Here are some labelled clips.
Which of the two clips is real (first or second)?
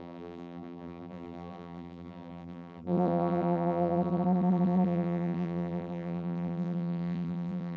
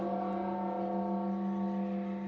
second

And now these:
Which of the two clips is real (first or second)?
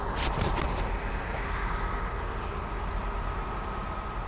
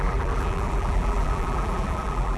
first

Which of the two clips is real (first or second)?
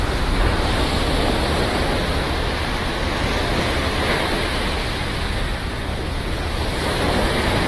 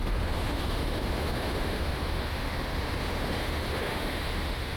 first